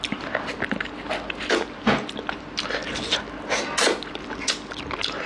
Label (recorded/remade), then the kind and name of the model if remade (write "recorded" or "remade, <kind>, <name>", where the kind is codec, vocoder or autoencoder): recorded